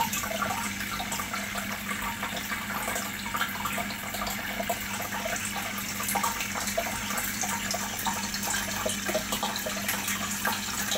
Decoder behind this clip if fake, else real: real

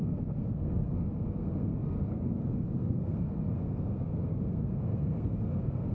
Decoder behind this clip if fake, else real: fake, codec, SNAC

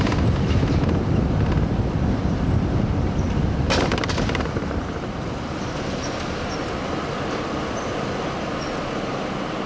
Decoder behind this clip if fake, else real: real